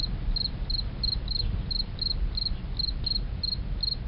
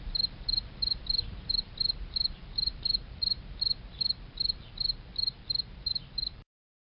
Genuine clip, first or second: first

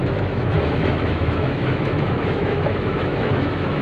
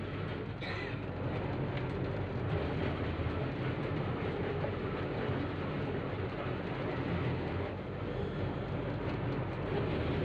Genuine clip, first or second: second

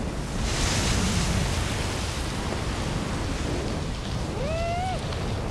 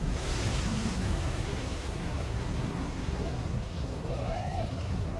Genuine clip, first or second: first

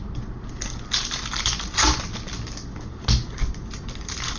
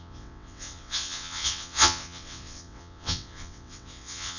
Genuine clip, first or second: first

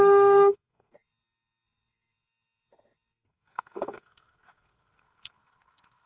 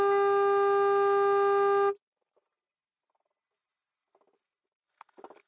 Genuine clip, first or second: second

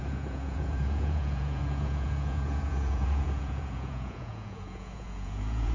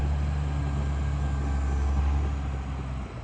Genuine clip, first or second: second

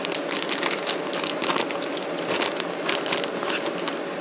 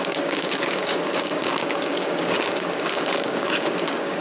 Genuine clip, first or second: first